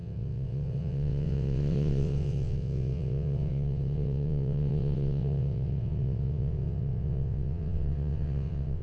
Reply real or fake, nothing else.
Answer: fake